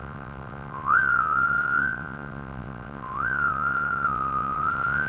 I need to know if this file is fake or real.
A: fake